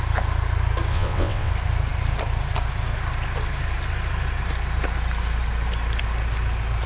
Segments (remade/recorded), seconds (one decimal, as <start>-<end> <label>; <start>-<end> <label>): 0.0-0.9 recorded; 0.9-1.5 remade; 1.5-6.9 recorded